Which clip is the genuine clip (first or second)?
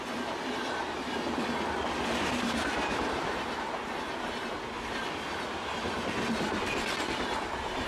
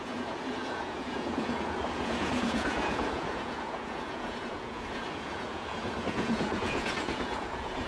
first